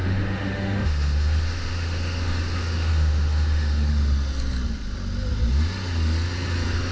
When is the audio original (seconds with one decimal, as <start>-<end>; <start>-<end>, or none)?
3.9-6.9